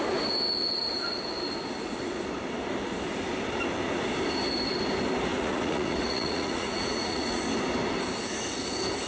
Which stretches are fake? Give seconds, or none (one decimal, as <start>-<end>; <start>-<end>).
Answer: 5.3-7.4